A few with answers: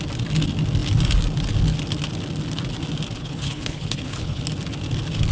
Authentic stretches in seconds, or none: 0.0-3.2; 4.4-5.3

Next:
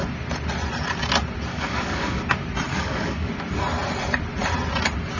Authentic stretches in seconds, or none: 0.0-1.5; 2.2-2.7; 3.3-5.2

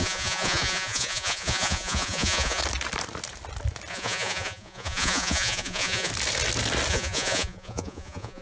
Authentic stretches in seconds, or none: 2.6-3.9; 6.1-6.9

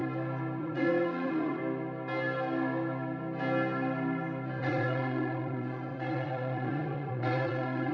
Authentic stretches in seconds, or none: 0.0-0.6; 1.6-4.6

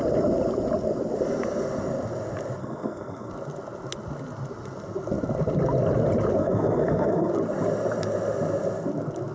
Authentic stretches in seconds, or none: 0.0-2.6; 3.3-6.4; 7.3-9.3